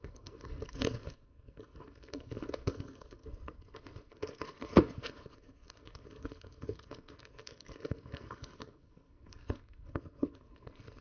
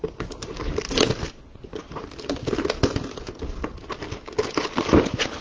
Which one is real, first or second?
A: second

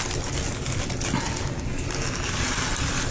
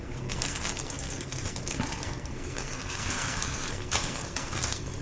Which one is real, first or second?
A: first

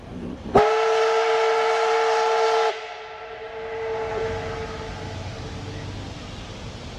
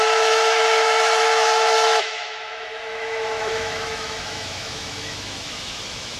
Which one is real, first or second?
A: first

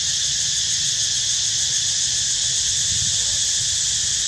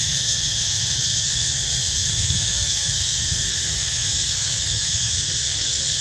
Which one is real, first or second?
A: first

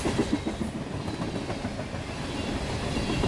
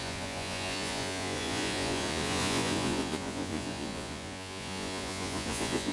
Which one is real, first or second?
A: first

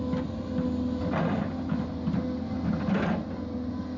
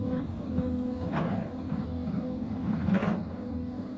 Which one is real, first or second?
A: first